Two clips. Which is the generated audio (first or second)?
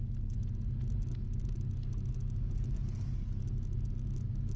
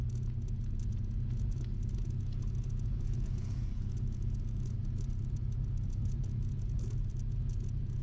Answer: second